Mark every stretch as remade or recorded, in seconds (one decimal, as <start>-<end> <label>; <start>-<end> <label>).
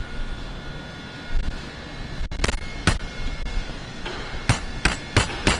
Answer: 0.0-5.6 recorded